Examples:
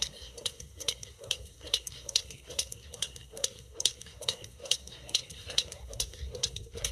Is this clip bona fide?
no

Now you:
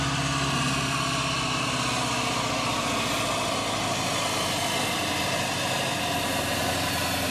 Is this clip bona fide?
yes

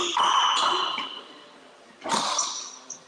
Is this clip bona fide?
yes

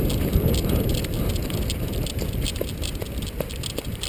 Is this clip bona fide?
yes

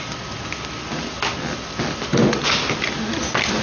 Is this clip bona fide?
yes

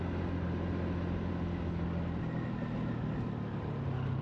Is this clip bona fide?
yes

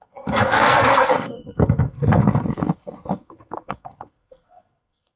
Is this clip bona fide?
no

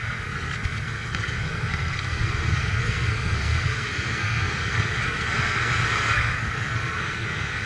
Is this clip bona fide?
no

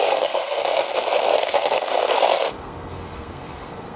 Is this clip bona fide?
no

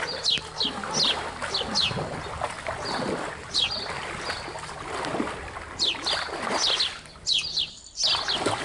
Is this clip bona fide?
yes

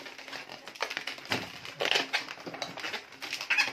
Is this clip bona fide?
yes